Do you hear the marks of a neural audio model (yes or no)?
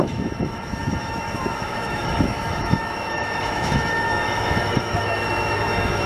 yes